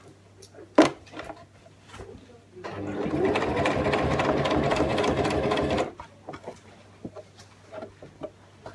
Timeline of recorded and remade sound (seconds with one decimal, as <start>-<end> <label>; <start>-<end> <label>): 0.0-4.9 recorded; 4.9-6.0 remade; 6.0-8.7 recorded